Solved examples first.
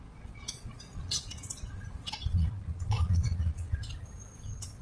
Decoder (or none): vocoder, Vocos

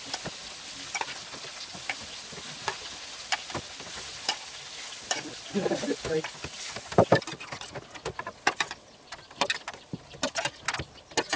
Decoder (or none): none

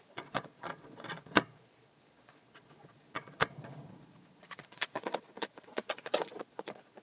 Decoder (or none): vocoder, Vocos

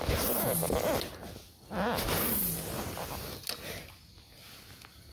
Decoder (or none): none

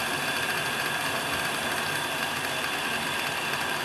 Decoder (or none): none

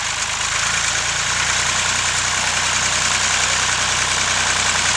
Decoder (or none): none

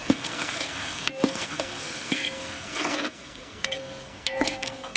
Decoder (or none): codec, SNAC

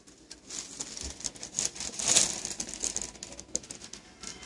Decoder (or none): none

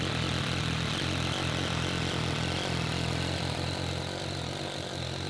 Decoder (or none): none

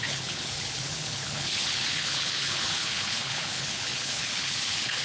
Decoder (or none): codec, HILCodec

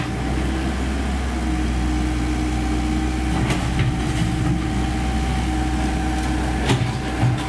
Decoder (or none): none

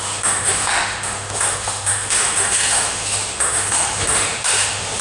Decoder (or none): autoencoder, DAC-VAE